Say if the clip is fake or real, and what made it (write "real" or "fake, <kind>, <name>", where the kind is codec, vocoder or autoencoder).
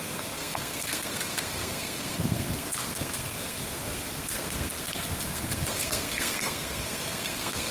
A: fake, codec, SNAC